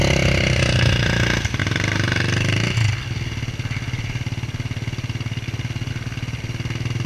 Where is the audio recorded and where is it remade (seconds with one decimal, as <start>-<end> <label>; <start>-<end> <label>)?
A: 0.0-7.1 recorded